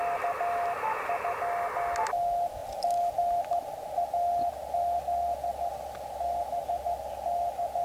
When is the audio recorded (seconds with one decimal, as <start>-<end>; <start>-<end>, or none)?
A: 0.0-7.8